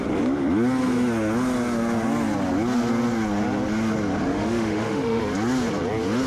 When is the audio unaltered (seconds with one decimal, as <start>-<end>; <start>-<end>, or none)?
0.0-4.3; 5.2-6.3